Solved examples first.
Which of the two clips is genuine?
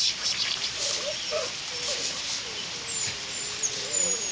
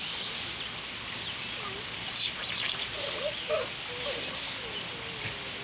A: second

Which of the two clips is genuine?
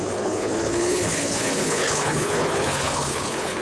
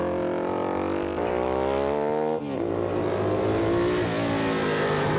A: second